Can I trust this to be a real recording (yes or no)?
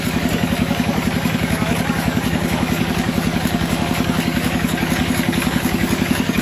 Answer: no